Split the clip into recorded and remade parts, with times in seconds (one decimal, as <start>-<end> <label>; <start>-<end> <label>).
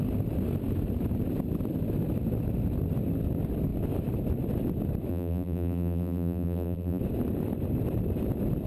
0.0-5.1 recorded; 5.1-7.0 remade; 7.0-8.7 recorded